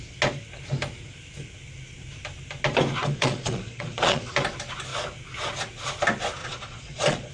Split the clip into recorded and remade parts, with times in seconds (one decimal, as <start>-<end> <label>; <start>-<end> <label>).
0.0-3.0 recorded; 3.0-4.3 remade; 4.3-6.4 recorded; 6.4-7.3 remade